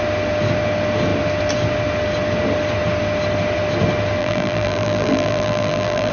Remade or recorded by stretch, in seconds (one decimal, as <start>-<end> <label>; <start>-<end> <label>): 0.0-4.2 recorded; 4.2-6.1 remade